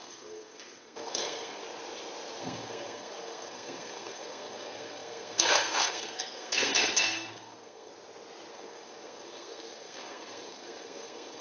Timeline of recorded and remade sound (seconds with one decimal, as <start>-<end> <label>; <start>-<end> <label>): 0.0-1.6 remade; 1.6-2.4 recorded; 2.4-7.9 remade; 7.9-8.5 recorded; 8.5-11.4 remade